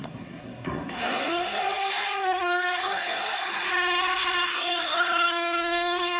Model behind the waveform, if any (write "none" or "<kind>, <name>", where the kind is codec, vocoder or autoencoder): codec, SNAC